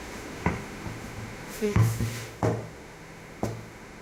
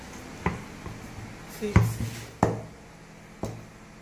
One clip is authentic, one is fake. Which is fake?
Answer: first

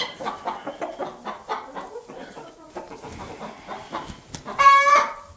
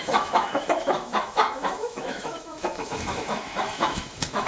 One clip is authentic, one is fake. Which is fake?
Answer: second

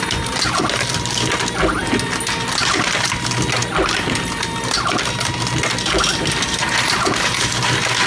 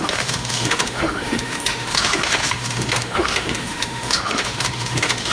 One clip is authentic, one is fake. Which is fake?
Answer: second